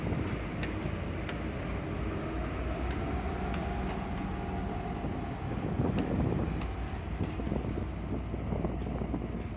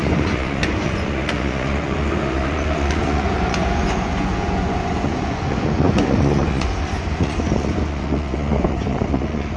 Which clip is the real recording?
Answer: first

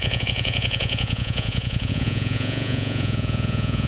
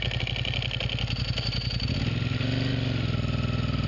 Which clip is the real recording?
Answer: second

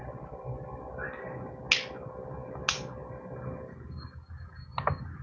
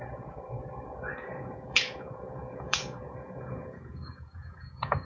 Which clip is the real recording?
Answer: first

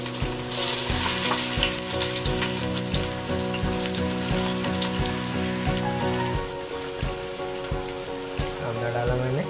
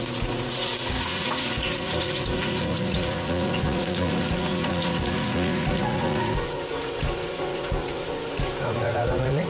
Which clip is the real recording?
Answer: first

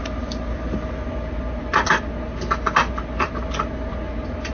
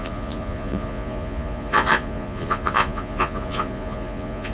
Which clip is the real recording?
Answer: first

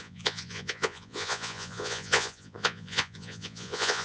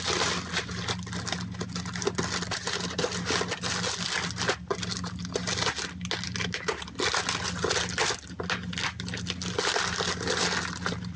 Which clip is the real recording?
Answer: second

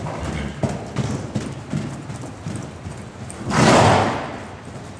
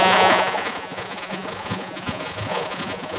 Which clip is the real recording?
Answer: first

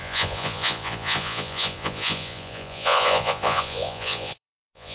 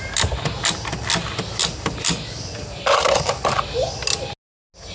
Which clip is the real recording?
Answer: second